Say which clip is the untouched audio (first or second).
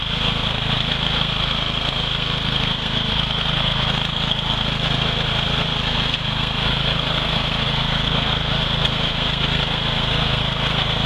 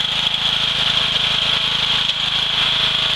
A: second